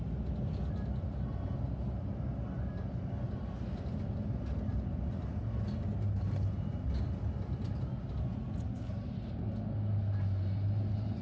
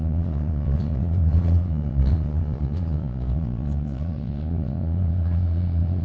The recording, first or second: first